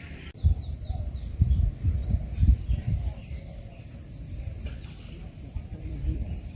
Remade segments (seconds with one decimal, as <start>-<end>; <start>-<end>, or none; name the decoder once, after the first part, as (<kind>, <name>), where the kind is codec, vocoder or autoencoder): 0.0-6.6 (vocoder, BigVGAN v2)